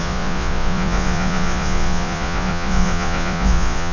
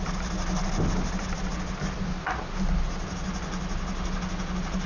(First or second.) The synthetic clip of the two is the first